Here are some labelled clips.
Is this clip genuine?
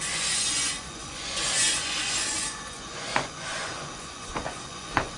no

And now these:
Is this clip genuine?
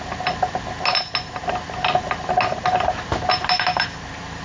yes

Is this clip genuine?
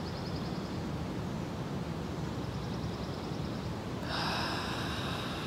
yes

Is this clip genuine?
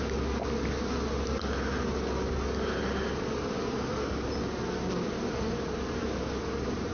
yes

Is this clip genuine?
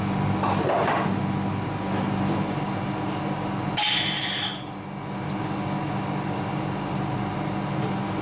yes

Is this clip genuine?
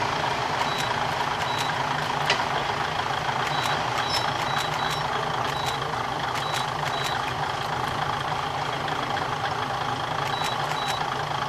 yes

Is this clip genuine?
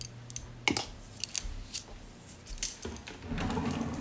yes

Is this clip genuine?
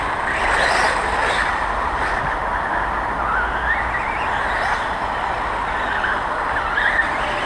yes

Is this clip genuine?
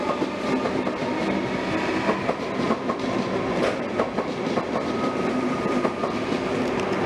yes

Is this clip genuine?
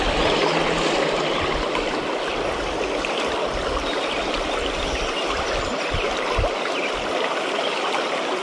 yes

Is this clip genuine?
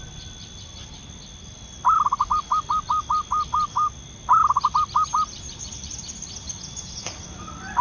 yes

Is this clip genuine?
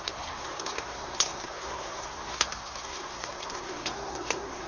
no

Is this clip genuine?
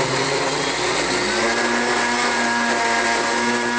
yes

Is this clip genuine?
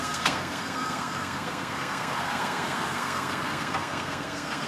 no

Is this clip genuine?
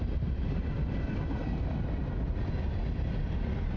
yes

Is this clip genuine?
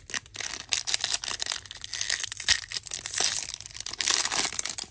yes